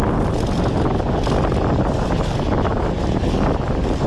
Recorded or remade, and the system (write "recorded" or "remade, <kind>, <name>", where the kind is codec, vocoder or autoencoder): recorded